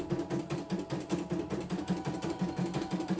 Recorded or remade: recorded